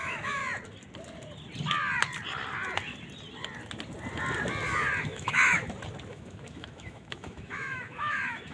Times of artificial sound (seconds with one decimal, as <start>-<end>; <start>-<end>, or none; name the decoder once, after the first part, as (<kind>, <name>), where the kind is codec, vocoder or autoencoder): 0.0-0.4 (autoencoder, DAC-VAE); 5.0-5.6; 6.1-8.5